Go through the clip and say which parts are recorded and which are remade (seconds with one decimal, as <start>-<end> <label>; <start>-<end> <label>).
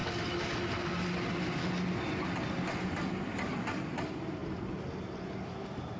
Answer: 0.0-6.0 recorded